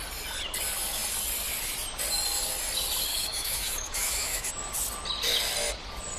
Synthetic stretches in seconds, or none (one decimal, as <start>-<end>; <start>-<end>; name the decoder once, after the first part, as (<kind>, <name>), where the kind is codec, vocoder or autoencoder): 3.1-4.5 (autoencoder, DAC-VAE)